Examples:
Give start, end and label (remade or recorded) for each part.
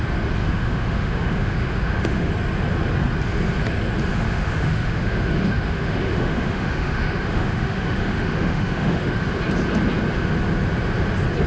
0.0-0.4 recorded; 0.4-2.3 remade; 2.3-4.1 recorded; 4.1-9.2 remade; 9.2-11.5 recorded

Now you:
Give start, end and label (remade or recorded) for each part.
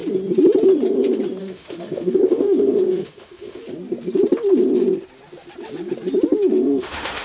0.0-1.4 recorded; 1.4-3.6 remade; 3.6-6.5 recorded; 6.5-7.2 remade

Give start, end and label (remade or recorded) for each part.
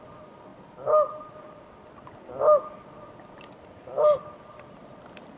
0.0-5.4 recorded